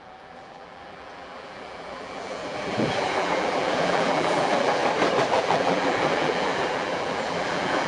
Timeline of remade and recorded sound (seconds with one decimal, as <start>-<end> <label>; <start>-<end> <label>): 0.0-4.8 remade; 4.8-5.3 recorded; 5.3-7.9 remade